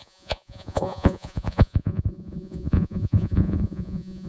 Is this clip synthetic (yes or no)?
yes